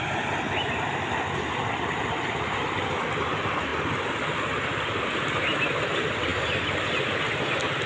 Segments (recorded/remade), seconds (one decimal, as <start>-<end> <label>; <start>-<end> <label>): 0.0-7.9 recorded